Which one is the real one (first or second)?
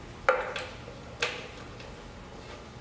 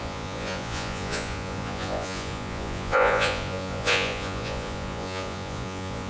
first